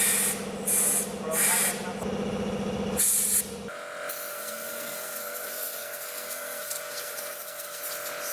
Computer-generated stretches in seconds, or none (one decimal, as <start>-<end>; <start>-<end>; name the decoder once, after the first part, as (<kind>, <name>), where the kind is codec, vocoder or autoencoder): 4.3-7.8 (codec, SNAC)

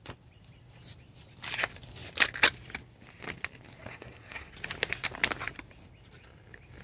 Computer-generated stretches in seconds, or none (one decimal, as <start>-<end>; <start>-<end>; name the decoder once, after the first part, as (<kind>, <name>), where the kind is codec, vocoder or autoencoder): 3.9-4.5 (codec, SNAC)

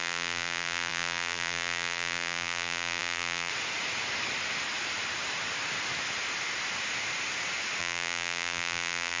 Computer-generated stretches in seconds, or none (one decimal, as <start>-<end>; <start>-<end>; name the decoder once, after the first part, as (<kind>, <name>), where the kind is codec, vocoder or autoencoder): 0.0-3.5 (vocoder, BigVGAN v2); 7.8-9.2

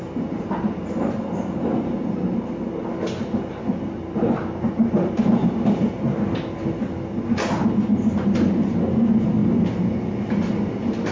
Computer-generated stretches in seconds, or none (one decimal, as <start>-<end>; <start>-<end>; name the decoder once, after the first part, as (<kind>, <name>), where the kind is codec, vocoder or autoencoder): none

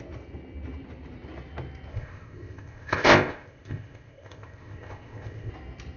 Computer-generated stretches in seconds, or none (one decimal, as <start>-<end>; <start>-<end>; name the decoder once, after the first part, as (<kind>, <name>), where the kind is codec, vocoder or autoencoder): 1.9-5.5 (codec, ZipCodec)